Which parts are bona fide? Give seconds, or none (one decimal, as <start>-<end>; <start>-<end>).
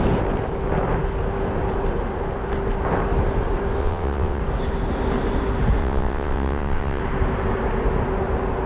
0.0-3.8; 4.4-5.8; 7.0-8.7